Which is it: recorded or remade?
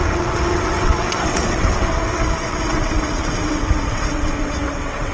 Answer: remade